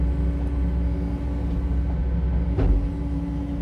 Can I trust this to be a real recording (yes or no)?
yes